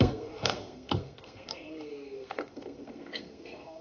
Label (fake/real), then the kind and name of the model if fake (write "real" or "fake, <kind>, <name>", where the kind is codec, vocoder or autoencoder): fake, codec, SNAC